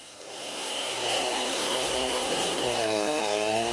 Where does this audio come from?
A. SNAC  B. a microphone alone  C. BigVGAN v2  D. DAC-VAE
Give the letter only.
A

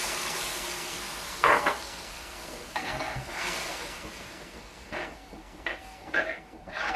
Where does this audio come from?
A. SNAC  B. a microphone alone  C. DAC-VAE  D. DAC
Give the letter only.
A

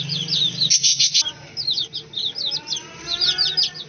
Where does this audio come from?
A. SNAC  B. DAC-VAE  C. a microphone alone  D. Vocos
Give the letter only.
C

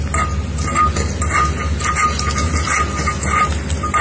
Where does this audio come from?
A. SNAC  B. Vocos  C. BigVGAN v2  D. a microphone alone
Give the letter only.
D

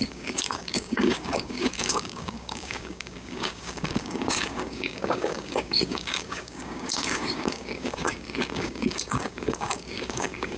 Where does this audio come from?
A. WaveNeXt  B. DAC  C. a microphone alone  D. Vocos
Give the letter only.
B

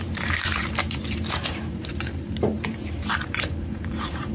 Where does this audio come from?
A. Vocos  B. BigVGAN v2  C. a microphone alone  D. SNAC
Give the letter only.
B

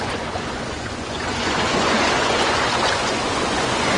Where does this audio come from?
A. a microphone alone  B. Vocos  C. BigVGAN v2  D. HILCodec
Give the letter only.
B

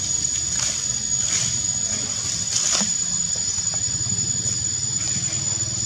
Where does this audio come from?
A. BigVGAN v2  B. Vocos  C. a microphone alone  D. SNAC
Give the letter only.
C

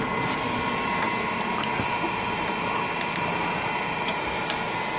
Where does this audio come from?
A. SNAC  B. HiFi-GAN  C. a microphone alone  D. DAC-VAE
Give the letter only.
C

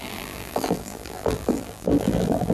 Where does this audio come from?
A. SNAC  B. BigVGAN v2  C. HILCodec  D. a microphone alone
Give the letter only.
B